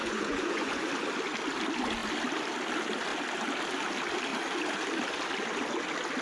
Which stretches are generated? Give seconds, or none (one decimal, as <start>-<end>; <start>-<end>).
0.0-0.9